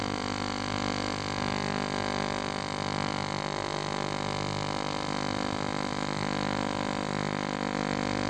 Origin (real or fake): real